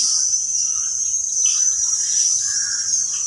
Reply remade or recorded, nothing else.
recorded